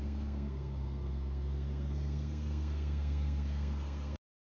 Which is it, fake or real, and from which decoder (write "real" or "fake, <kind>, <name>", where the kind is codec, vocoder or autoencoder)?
fake, codec, SNAC